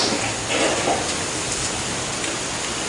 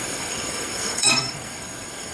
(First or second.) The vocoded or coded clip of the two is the second